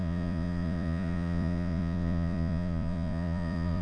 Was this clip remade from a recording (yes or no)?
yes